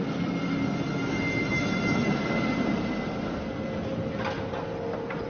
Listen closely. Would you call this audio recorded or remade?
recorded